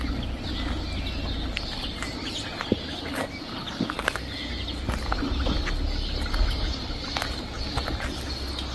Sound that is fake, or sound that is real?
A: real